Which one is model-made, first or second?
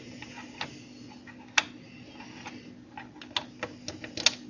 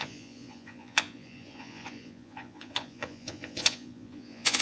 second